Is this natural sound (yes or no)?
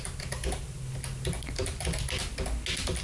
yes